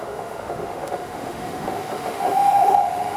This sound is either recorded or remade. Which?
remade